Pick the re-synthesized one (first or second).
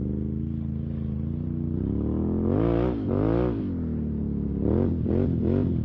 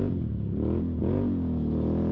second